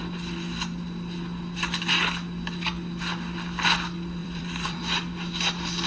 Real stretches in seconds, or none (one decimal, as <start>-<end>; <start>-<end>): 0.0-4.2; 4.8-5.9